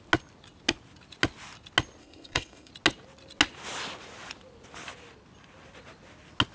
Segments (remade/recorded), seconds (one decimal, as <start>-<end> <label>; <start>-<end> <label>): 0.0-2.0 recorded; 2.0-2.7 remade; 2.7-6.5 recorded